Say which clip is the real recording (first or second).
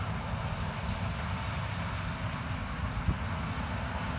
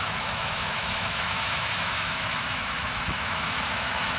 first